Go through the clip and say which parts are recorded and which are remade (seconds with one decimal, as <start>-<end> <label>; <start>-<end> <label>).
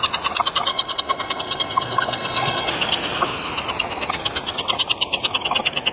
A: 0.0-0.7 recorded; 0.7-2.7 remade; 2.7-5.9 recorded